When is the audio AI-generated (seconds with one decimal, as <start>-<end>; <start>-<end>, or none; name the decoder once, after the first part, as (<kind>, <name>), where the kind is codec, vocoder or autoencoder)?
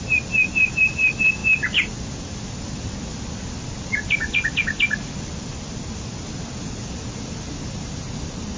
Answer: none